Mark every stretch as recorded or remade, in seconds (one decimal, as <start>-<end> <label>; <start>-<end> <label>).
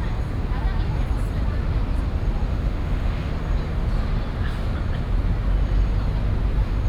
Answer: 0.0-2.5 recorded; 2.5-3.3 remade; 3.3-6.9 recorded